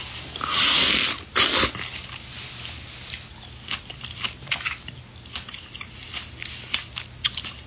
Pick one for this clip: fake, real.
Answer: real